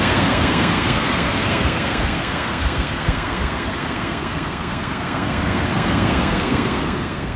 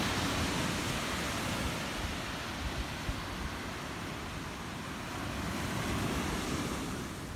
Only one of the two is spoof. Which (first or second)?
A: first